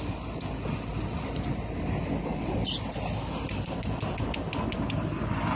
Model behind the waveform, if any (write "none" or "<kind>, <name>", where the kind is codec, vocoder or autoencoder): none